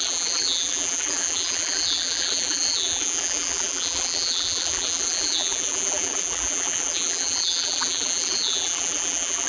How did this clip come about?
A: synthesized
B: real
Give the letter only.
A